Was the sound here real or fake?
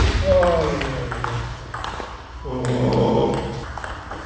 real